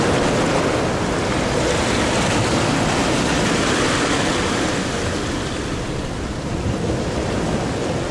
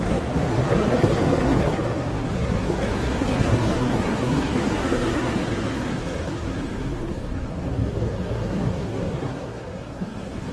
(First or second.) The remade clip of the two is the second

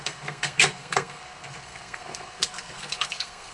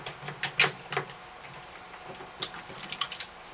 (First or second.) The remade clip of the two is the first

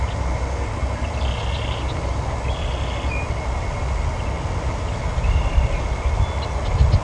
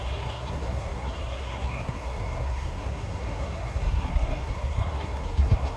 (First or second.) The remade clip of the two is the second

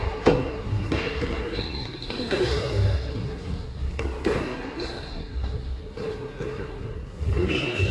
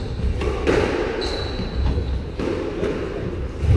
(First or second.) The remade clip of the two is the first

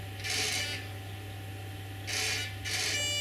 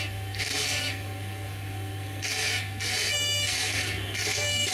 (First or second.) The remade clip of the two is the second